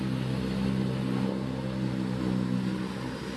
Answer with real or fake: real